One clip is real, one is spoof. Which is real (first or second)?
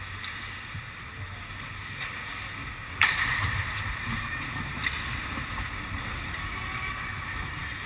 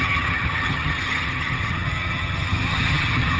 first